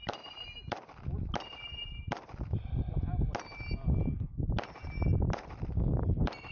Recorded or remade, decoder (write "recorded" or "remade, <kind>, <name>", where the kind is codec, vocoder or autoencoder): recorded